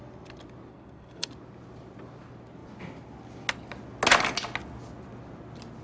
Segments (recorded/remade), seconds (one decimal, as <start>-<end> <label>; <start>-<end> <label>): 0.0-0.7 recorded; 0.7-1.3 remade; 1.3-5.8 recorded